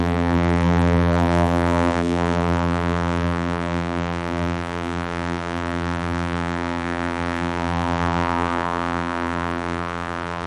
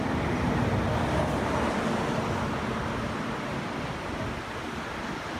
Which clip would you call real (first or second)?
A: second